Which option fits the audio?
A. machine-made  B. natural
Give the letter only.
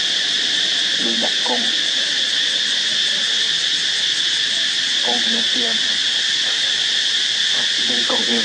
B